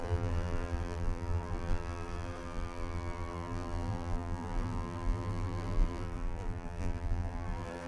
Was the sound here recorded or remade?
remade